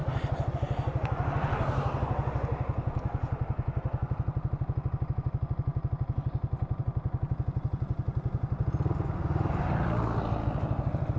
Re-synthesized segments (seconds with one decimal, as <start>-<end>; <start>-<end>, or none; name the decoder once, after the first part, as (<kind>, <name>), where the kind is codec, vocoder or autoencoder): none